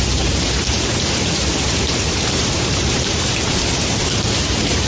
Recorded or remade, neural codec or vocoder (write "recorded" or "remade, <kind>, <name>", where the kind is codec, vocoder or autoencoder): remade, vocoder, BigVGAN v2